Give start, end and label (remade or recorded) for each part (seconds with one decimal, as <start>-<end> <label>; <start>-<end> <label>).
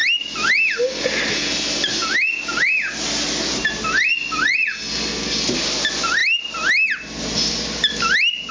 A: 0.0-8.5 recorded